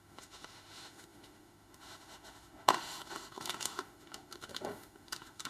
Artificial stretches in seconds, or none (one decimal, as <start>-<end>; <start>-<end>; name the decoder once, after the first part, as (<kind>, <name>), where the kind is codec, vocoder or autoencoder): 0.0-5.5 (autoencoder, DAC-VAE)